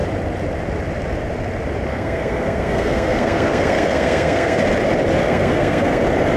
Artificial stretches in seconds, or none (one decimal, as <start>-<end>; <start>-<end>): 1.9-4.6; 5.2-6.0